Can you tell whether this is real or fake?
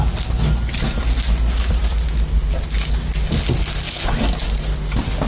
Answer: real